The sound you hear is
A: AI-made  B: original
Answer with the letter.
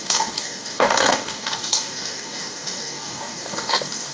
A